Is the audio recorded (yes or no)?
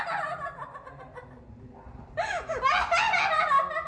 yes